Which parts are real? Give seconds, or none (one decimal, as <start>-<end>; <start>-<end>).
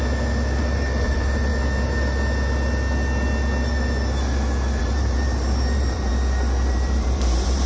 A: 0.0-0.6; 1.5-4.8; 6.1-6.7